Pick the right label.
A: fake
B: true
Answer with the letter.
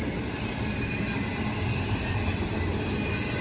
B